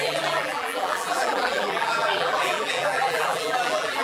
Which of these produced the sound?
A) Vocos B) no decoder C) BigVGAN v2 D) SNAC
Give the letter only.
C